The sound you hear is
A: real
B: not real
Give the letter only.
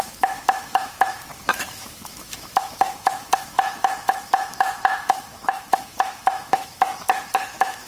B